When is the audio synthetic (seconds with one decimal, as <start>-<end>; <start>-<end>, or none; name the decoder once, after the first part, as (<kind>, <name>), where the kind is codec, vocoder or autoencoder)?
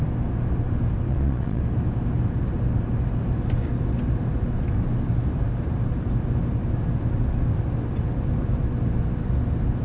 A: 1.1-1.6 (vocoder, Vocos)